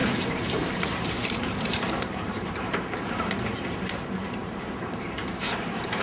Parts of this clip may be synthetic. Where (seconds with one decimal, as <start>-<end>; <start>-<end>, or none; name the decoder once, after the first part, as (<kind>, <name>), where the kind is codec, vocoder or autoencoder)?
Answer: 0.0-6.0 (vocoder, BigVGAN v2)